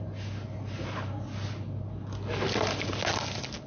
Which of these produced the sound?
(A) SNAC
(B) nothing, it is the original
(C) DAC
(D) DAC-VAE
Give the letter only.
B